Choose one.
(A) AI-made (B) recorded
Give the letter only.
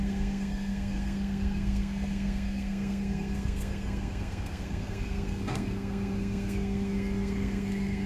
A